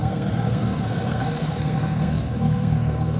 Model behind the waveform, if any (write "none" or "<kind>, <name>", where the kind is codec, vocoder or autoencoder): codec, SNAC